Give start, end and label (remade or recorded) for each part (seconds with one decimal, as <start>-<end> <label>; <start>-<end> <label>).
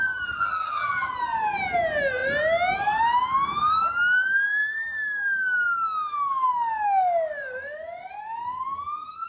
0.0-0.4 recorded; 0.4-1.1 remade; 1.1-9.3 recorded